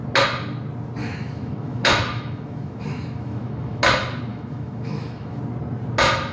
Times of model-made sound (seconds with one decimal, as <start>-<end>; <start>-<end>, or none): 1.0-3.8; 4.3-5.4